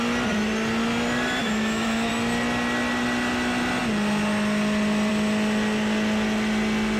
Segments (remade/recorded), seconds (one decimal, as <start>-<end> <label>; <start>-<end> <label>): 0.0-1.4 recorded; 1.4-2.1 remade; 2.1-7.0 recorded